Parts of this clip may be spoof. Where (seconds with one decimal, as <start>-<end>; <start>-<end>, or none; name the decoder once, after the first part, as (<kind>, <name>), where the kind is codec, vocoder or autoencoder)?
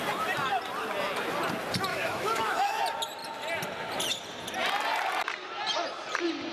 1.9-2.8 (autoencoder, DAC-VAE)